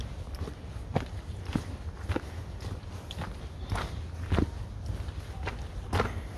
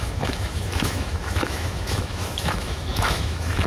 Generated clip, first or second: second